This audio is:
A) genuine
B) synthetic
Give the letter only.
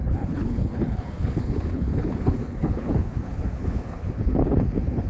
B